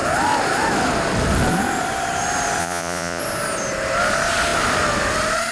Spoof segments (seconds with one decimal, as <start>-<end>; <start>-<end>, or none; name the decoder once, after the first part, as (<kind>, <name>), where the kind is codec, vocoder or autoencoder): 2.6-3.2 (vocoder, Vocos)